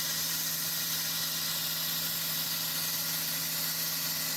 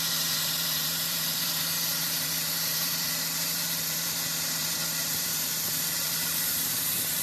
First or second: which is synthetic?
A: second